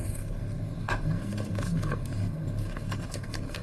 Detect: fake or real fake